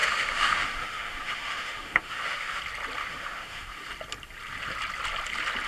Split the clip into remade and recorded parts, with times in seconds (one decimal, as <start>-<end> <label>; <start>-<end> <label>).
0.0-2.6 remade; 2.6-3.0 recorded; 3.0-3.9 remade; 3.9-5.7 recorded